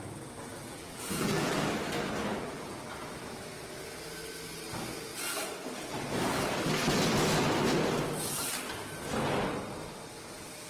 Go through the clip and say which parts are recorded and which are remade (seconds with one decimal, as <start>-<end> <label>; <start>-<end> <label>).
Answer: 0.0-0.5 recorded; 0.5-1.5 remade; 1.5-2.3 recorded; 2.3-2.9 remade; 2.9-10.7 recorded